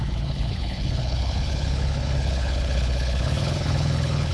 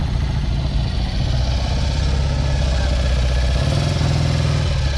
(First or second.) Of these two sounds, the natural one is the second